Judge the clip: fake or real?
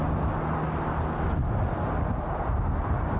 real